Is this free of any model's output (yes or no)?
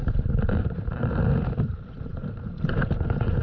no